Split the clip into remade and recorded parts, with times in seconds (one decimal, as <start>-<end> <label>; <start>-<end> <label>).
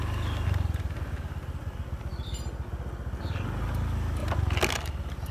0.0-5.3 recorded